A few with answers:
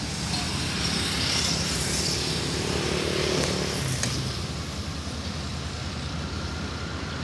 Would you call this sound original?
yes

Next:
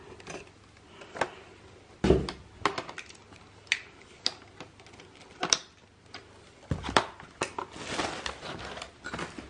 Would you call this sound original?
yes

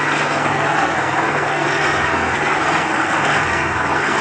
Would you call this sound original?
no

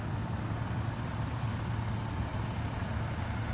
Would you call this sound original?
yes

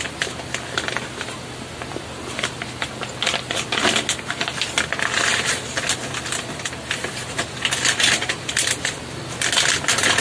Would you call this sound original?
yes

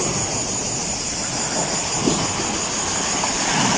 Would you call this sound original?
yes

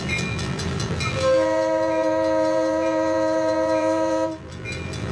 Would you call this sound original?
no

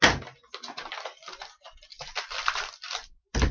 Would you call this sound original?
yes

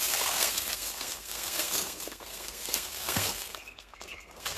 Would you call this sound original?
no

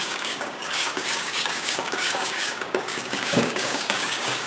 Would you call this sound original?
no